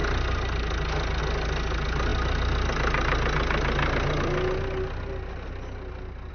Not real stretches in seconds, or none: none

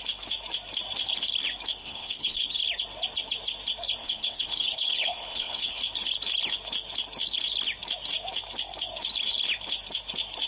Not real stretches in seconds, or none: 1.8-2.6 (codec, HILCodec); 4.0-5.8

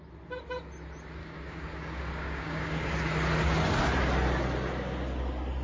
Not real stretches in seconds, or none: 1.2-2.9 (codec, DAC)

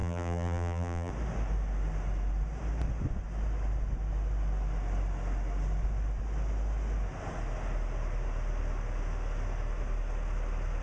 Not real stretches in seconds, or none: 0.0-1.1 (vocoder, BigVGAN v2)

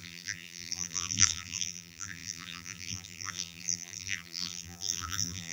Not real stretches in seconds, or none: 0.0-5.5 (vocoder, BigVGAN v2)

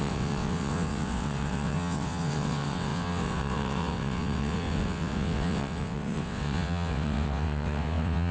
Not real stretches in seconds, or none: 0.0-8.3 (vocoder, WaveNeXt)

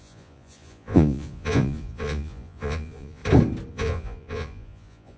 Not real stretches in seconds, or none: 0.0-3.2 (vocoder, Vocos); 3.7-5.2